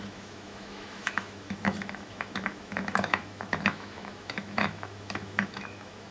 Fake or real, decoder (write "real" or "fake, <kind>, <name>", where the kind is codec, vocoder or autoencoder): fake, autoencoder, DAC-VAE